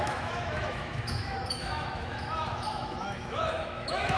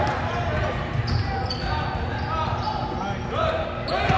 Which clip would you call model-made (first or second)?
first